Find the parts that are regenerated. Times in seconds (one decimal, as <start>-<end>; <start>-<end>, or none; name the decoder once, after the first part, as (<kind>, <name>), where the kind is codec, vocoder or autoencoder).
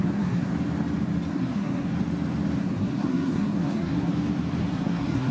0.0-0.5 (codec, SNAC); 1.3-1.9; 2.6-4.1; 4.6-5.3